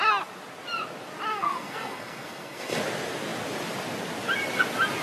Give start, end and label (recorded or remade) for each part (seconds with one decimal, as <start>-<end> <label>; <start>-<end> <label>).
0.0-1.3 recorded; 1.3-2.8 remade; 2.8-5.0 recorded